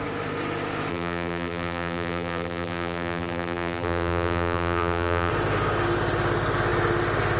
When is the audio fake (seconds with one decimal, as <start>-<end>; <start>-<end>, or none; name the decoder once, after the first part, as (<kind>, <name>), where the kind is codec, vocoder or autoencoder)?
0.9-5.3 (vocoder, BigVGAN v2)